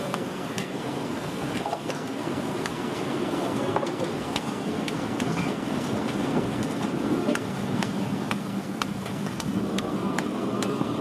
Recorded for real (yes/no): no